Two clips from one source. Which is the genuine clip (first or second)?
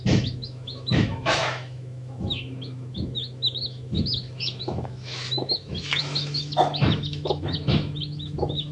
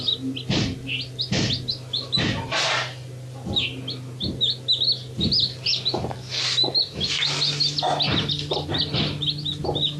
second